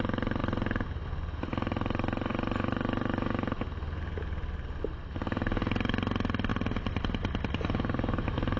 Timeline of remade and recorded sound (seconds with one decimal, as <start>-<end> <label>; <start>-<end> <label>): 0.0-8.6 recorded